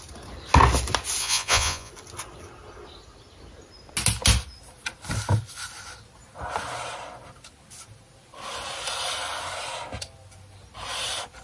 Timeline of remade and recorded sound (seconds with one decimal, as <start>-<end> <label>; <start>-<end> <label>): 0.0-1.2 recorded; 1.2-1.9 remade; 1.9-11.4 recorded